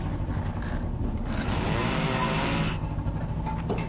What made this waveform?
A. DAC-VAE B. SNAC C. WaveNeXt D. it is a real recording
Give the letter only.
D